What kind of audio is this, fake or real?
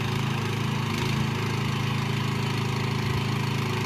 real